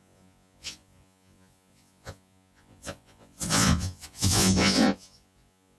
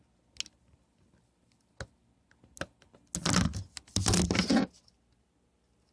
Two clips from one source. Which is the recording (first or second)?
second